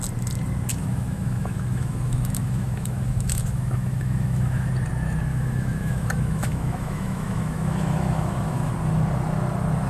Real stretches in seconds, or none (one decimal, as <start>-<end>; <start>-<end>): 0.0-0.7; 4.7-5.3; 8.7-9.9

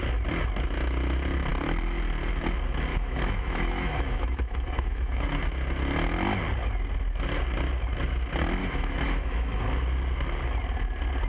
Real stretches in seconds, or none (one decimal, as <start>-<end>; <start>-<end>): 0.0-2.9; 5.4-8.6; 9.6-11.3

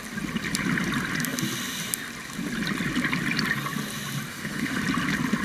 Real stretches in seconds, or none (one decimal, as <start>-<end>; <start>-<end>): 0.0-4.3; 4.8-5.4

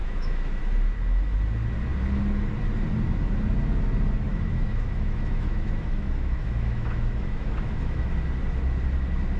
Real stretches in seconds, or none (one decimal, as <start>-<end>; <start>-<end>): 0.6-4.3; 8.1-9.4